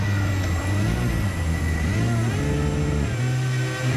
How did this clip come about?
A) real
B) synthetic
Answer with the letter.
A